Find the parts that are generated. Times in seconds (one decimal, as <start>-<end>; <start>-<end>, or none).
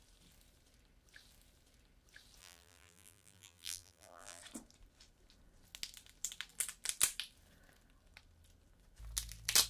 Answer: 2.4-4.4